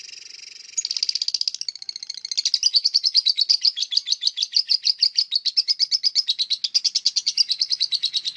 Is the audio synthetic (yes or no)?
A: no